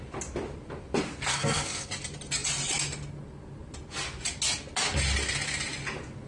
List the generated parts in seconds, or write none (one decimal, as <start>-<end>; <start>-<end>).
1.3-1.9